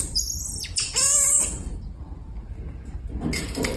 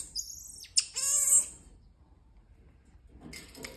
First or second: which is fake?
first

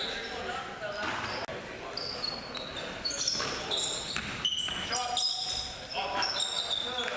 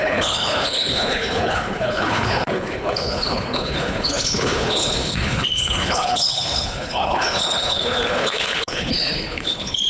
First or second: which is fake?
second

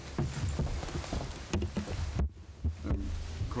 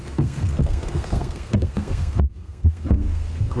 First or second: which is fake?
second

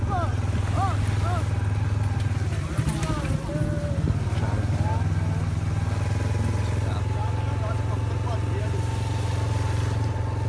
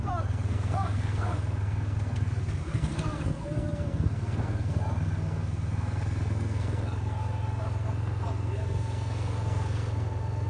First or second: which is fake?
second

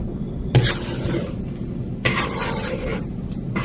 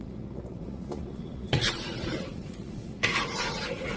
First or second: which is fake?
second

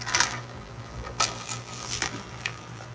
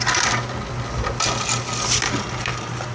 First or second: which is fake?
first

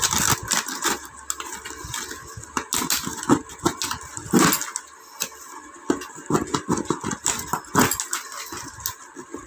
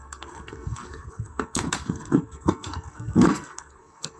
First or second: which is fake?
second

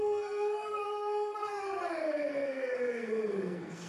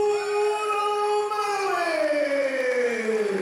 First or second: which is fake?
first